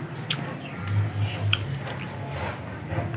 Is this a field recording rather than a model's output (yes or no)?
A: yes